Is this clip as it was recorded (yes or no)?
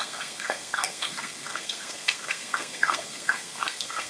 no